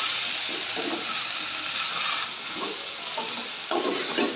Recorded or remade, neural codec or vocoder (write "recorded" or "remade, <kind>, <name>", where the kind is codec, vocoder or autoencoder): recorded